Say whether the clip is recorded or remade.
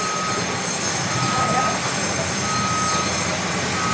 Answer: recorded